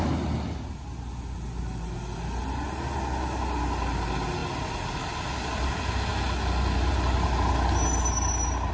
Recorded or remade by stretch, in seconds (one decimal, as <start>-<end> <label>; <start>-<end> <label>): 0.0-8.7 recorded